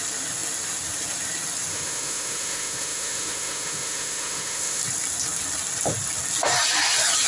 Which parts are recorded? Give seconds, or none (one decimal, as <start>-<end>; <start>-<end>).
0.0-1.7; 4.8-7.3